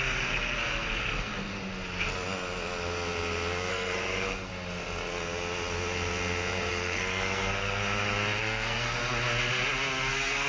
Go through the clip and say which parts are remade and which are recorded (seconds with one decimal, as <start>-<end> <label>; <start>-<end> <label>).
0.0-1.5 remade; 1.5-3.7 recorded; 3.7-4.5 remade; 4.5-6.7 recorded; 6.7-7.8 remade; 7.8-8.4 recorded; 8.4-9.0 remade; 9.0-10.1 recorded; 10.1-10.5 remade